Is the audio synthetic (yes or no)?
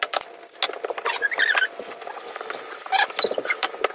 no